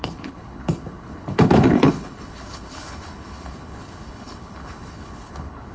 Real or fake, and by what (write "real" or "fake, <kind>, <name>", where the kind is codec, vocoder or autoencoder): fake, codec, HILCodec